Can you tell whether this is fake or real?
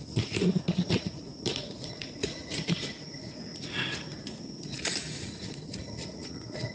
fake